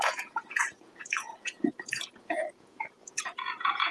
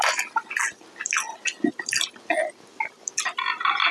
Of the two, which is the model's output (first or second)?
first